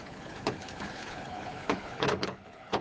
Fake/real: fake